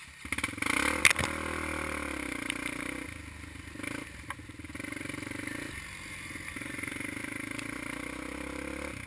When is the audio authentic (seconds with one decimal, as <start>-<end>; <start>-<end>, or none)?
0.0-9.1